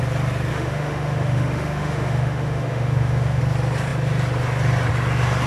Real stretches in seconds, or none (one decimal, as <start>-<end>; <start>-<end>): 0.0-0.5; 3.4-5.5